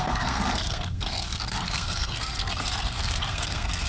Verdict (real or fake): fake